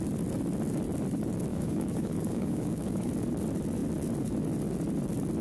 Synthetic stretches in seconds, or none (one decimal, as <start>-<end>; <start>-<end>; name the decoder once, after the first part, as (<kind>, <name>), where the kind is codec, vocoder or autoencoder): 1.5-3.1 (codec, DAC)